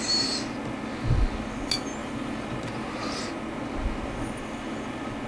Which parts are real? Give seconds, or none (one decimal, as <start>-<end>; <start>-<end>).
0.0-2.0; 3.3-5.3